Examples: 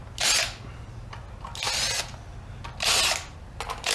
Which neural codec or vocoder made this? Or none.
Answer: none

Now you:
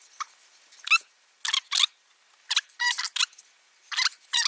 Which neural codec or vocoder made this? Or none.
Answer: none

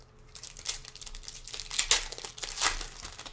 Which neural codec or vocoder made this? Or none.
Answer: none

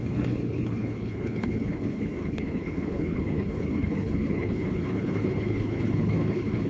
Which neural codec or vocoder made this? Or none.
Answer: codec, HILCodec